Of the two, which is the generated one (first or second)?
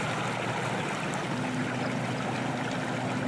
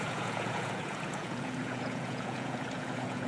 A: second